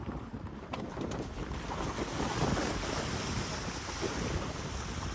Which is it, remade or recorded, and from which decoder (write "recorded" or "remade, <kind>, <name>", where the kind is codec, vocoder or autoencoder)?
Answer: recorded